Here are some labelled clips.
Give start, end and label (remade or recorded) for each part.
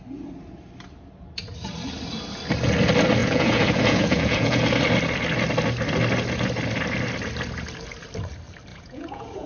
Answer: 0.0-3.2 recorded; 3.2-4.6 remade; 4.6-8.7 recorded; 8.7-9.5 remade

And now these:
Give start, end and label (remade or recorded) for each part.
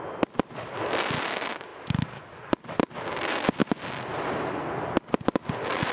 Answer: 0.0-5.9 recorded